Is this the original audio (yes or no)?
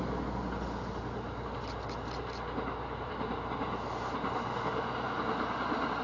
yes